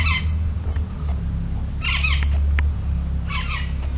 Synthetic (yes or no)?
no